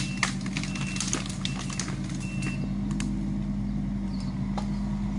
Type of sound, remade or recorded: recorded